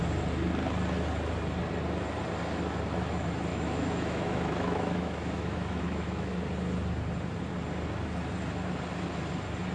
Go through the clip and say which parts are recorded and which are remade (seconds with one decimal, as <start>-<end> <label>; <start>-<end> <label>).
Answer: 0.0-3.5 recorded; 3.5-6.3 remade; 6.3-9.7 recorded